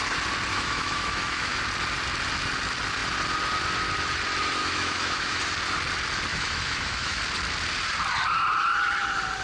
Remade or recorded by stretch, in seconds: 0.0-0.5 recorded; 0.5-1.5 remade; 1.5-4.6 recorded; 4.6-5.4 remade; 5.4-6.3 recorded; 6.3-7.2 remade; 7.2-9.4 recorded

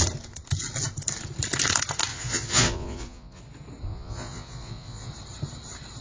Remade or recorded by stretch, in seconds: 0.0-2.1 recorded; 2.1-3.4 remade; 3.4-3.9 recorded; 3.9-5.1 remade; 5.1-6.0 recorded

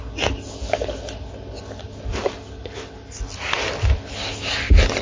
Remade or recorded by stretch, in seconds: 0.0-5.0 recorded

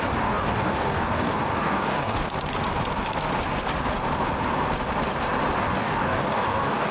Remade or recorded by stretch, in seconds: 0.0-2.2 remade; 2.2-5.6 recorded; 5.6-6.9 remade